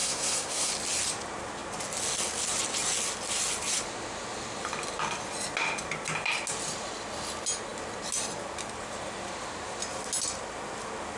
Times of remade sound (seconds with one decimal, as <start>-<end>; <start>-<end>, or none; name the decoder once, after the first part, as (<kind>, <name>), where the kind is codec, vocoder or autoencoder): 0.0-0.7 (codec, SNAC)